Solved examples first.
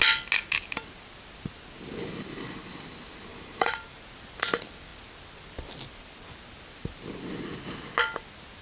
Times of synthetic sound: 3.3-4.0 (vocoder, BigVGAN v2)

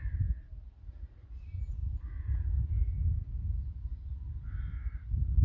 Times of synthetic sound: none